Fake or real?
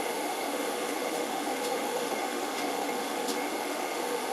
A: fake